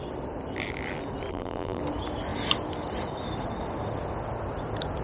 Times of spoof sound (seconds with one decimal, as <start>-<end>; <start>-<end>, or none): 1.3-1.8